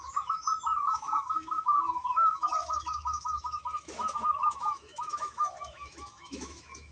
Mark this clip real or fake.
fake